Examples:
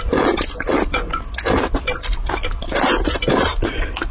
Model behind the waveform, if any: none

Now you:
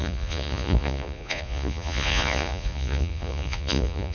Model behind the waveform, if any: vocoder, Vocos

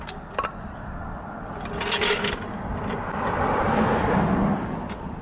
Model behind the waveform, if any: none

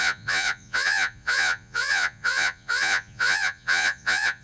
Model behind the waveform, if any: vocoder, Vocos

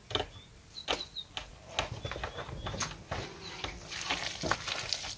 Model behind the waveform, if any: none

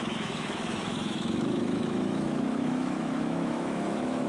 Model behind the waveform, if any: autoencoder, DAC-VAE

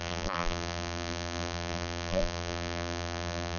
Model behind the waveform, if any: vocoder, BigVGAN v2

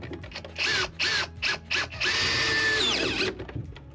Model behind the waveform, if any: none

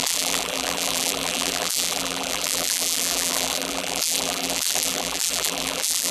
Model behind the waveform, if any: vocoder, BigVGAN v2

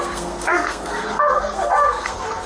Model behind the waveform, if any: codec, SNAC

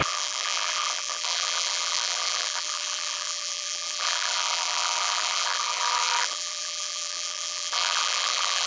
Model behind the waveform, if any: vocoder, BigVGAN v2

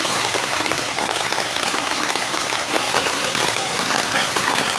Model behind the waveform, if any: codec, SNAC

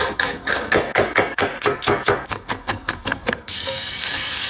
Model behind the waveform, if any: codec, SNAC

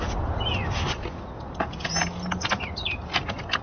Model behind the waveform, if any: none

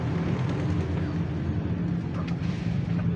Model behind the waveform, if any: none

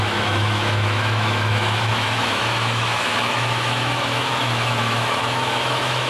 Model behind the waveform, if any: autoencoder, DAC-VAE